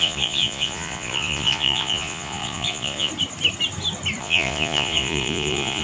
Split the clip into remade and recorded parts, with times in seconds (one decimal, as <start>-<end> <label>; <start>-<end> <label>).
0.0-3.1 remade; 3.1-4.2 recorded; 4.2-5.8 remade